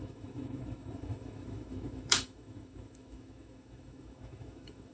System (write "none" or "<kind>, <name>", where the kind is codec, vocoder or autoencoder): autoencoder, DAC-VAE